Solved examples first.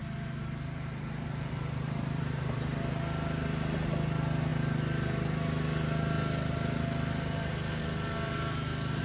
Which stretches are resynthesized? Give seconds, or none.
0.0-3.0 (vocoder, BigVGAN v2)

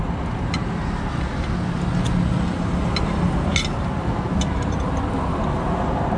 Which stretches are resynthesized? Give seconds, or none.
none